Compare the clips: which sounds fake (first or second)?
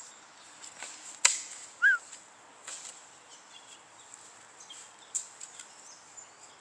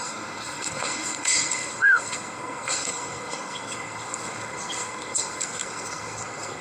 second